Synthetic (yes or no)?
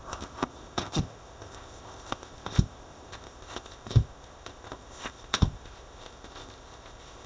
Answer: yes